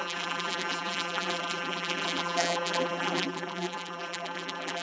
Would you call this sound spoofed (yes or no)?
yes